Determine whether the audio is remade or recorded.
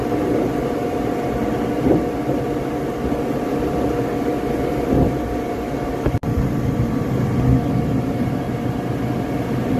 recorded